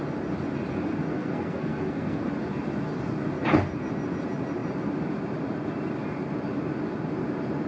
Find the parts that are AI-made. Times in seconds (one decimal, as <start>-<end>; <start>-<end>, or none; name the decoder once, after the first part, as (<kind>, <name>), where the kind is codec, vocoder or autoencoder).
1.1-2.2 (codec, SNAC)